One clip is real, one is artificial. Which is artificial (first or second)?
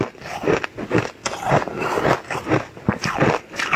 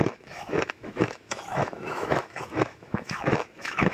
second